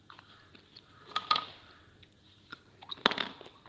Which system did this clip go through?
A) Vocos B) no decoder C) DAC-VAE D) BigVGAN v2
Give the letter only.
B